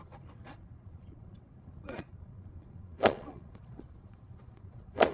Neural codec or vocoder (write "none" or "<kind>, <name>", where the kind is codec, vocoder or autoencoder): vocoder, Vocos